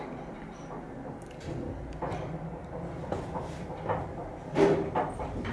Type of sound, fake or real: fake